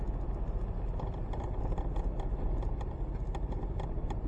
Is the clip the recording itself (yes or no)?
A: yes